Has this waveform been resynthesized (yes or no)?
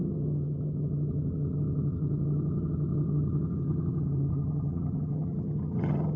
yes